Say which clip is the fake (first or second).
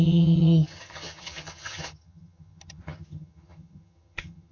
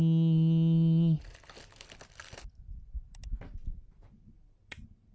first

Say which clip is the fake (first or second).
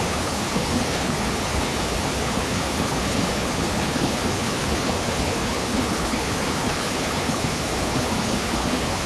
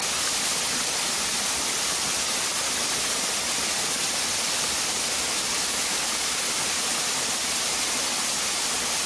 first